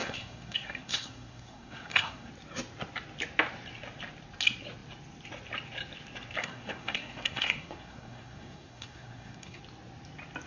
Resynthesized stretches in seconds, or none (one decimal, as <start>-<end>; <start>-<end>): 0.0-2.3; 6.4-9.6